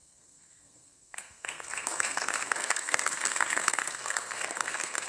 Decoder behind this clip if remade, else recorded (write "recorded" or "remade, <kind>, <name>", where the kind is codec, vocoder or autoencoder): remade, codec, SNAC